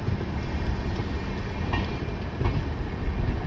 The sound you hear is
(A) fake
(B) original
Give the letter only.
B